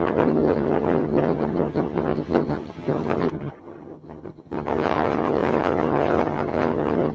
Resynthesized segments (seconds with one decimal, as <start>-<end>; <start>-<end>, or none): 0.0-7.1